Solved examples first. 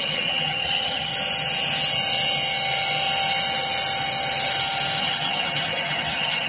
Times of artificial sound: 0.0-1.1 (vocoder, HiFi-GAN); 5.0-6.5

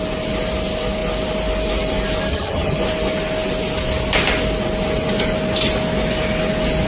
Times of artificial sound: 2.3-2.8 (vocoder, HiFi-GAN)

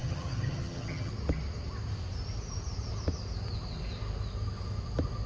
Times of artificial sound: 0.0-1.1 (vocoder, HiFi-GAN)